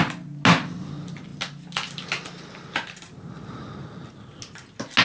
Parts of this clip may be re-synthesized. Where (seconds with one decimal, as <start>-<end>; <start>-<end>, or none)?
none